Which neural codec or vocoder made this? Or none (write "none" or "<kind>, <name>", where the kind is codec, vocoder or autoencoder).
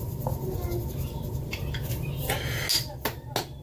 none